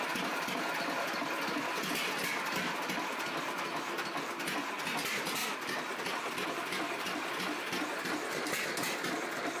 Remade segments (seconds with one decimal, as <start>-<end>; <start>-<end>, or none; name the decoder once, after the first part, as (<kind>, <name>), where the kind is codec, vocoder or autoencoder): none